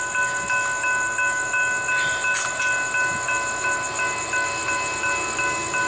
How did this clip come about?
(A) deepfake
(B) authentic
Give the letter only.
B